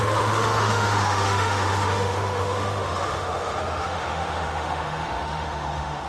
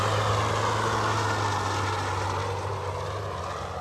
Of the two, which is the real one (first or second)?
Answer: second